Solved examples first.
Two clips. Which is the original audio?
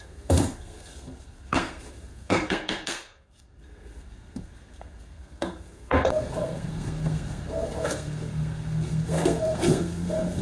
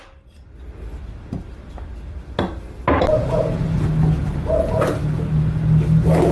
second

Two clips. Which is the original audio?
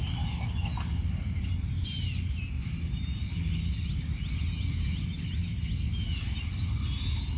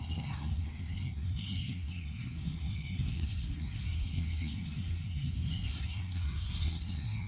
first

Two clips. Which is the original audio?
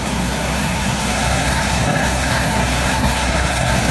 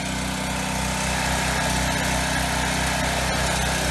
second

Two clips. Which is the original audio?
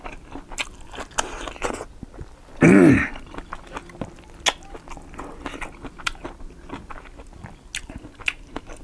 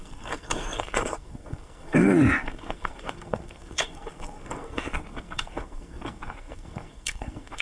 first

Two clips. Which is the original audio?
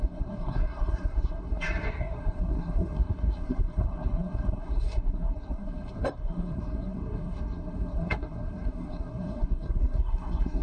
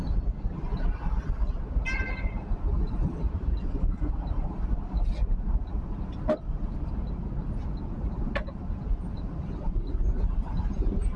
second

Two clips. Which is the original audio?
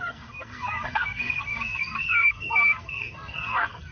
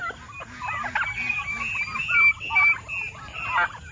second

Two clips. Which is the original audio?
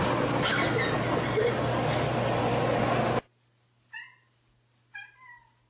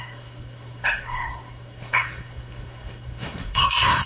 first